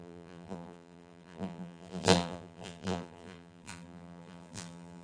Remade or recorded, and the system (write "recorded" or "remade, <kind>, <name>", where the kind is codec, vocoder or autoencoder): remade, vocoder, BigVGAN v2